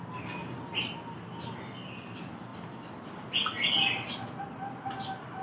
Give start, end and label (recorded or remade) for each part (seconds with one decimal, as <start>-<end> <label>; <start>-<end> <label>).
0.0-5.4 recorded